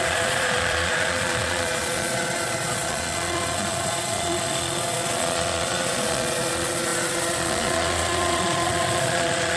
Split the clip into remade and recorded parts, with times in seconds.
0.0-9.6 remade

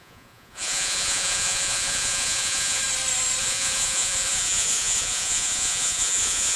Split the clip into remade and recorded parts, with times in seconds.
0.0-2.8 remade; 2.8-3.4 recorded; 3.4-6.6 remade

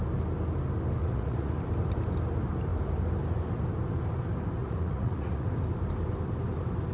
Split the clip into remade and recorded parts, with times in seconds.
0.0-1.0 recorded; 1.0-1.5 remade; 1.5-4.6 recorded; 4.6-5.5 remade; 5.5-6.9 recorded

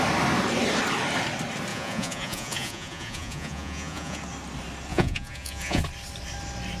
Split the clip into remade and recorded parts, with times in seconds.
0.0-1.7 recorded; 1.7-4.2 remade; 4.2-4.9 recorded; 4.9-5.8 remade; 5.8-6.8 recorded

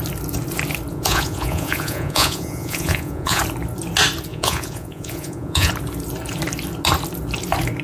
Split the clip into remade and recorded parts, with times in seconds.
0.0-0.9 recorded; 0.9-3.4 remade; 3.4-4.3 recorded; 4.3-5.7 remade; 5.7-7.8 recorded

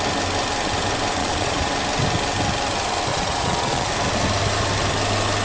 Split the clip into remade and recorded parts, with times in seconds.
0.0-1.2 recorded; 1.2-1.7 remade; 1.7-3.1 recorded; 3.1-3.9 remade; 3.9-5.4 recorded

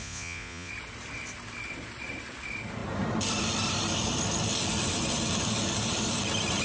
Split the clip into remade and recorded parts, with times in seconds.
0.0-0.7 remade; 0.7-6.6 recorded

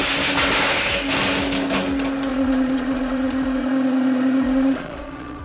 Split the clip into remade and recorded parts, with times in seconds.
0.0-2.3 recorded; 2.3-5.4 remade